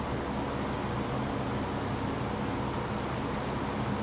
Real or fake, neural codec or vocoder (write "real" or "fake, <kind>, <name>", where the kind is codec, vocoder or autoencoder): real